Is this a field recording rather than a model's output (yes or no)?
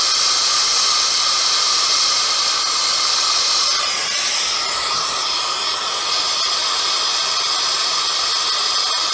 yes